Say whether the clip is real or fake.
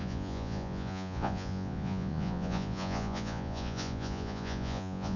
fake